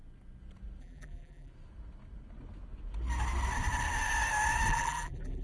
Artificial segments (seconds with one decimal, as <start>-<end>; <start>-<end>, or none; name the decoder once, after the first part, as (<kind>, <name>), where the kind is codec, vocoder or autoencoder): 0.8-1.5 (vocoder, BigVGAN v2); 4.7-5.4